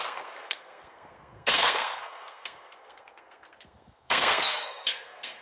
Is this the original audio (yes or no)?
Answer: no